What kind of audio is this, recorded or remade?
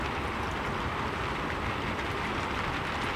recorded